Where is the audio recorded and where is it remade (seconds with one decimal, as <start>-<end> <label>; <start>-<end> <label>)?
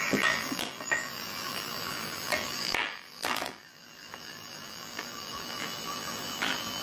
0.0-6.8 remade